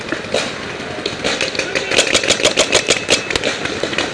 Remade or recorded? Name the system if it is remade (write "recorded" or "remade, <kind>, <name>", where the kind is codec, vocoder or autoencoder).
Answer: recorded